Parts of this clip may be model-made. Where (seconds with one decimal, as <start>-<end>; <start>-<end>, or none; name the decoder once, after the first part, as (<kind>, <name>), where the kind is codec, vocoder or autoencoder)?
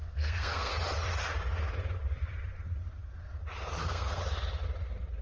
0.0-0.7 (codec, SNAC); 3.8-4.2